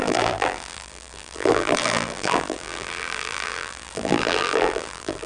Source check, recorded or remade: remade